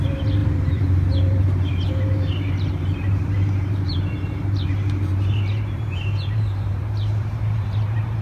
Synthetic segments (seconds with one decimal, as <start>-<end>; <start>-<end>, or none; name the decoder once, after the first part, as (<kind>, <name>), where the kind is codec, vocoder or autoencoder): 0.0-8.2 (vocoder, BigVGAN v2)